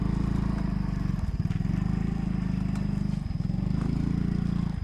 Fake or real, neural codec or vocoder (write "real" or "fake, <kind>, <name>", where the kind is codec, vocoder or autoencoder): real